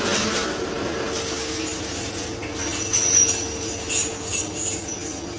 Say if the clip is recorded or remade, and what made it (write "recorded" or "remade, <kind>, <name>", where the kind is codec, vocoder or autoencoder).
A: recorded